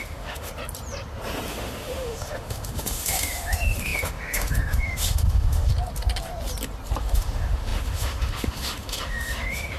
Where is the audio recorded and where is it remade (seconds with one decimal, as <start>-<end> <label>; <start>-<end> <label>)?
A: 0.0-0.5 remade; 0.5-1.5 recorded; 1.5-5.7 remade; 5.7-7.0 recorded; 7.0-9.8 remade